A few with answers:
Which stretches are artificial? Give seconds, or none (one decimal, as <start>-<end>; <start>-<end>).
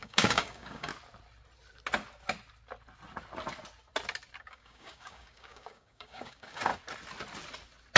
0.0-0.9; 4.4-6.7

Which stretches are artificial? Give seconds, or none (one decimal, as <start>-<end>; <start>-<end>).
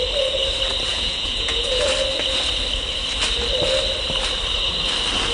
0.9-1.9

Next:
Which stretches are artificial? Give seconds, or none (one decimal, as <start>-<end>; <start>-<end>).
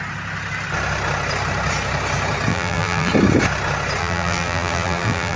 2.5-3.1; 4.0-5.4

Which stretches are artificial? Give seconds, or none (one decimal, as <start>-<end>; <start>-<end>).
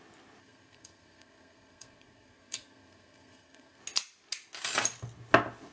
0.4-3.8